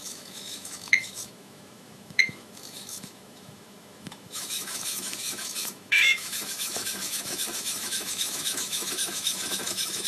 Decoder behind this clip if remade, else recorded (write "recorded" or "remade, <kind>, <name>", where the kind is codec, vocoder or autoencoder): remade, autoencoder, DAC-VAE